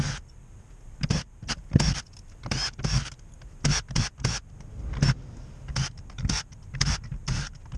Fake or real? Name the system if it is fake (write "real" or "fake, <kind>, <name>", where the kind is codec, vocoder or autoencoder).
real